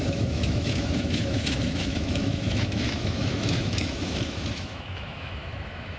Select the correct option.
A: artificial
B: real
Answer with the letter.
A